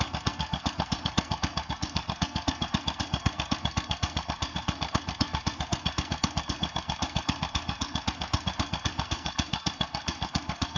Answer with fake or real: fake